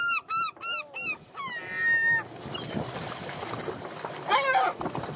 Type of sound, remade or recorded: recorded